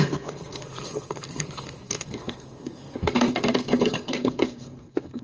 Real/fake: fake